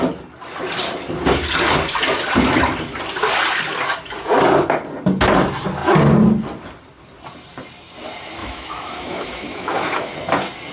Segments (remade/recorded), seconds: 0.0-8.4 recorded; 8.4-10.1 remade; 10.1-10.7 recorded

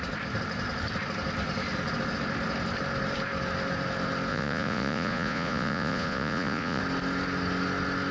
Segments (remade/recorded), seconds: 0.0-4.3 recorded; 4.3-6.8 remade; 6.8-8.1 recorded

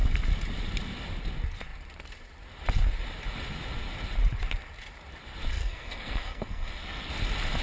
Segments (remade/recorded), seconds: 0.0-5.6 recorded; 5.6-7.1 remade; 7.1-7.6 recorded

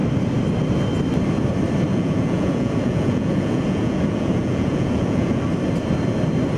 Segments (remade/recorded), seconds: 0.0-1.9 recorded; 1.9-5.4 remade; 5.4-6.6 recorded

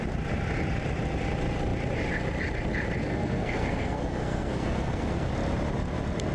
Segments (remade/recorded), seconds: 0.0-3.0 recorded; 3.0-5.3 remade; 5.3-6.3 recorded

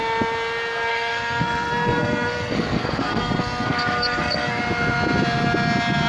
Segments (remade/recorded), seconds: 0.0-0.9 recorded; 0.9-4.6 remade; 4.6-6.1 recorded

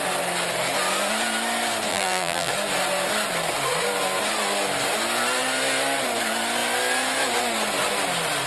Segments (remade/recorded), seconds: 0.0-1.9 recorded; 1.9-2.5 remade; 2.5-8.5 recorded

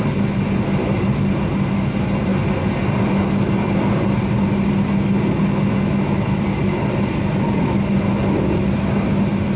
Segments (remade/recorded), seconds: 0.0-9.6 recorded